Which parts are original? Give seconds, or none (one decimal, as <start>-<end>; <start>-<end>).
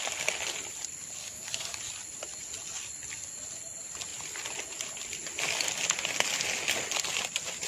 0.0-1.2; 1.8-7.7